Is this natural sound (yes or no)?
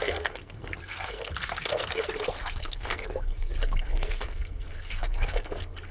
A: no